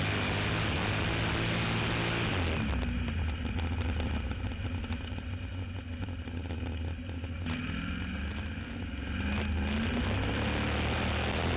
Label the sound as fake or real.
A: real